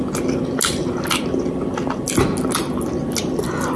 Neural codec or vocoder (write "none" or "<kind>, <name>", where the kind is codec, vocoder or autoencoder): none